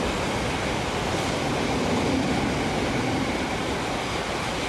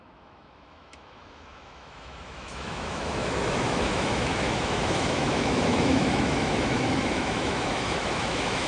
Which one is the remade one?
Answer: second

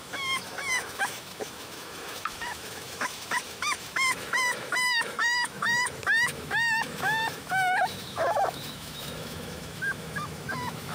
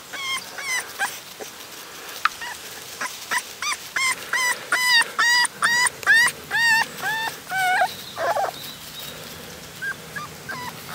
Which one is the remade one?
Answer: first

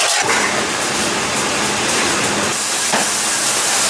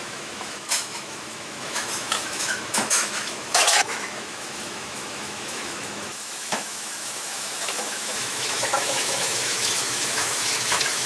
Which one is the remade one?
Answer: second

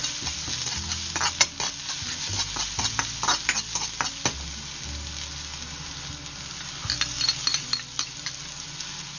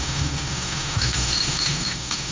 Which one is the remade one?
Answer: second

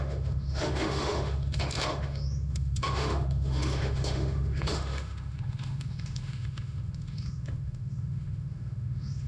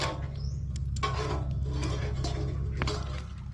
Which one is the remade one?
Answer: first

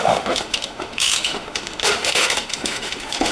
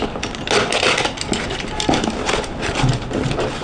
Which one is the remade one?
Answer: first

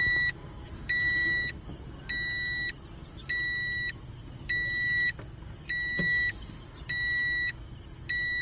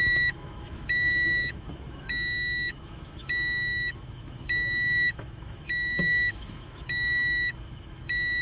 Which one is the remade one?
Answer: second